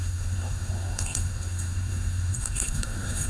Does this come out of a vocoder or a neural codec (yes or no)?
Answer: yes